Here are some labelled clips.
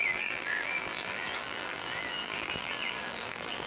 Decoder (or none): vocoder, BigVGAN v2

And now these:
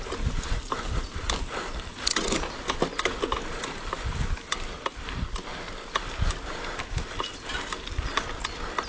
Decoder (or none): none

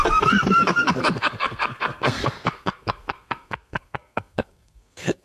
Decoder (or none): codec, SNAC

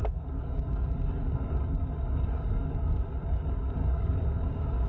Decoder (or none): codec, DAC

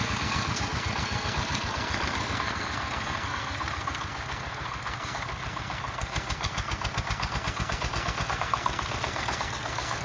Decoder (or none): codec, SNAC